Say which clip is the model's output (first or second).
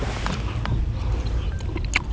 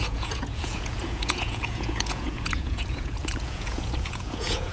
second